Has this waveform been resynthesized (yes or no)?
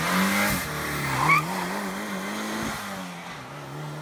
no